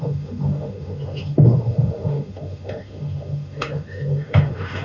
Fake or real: fake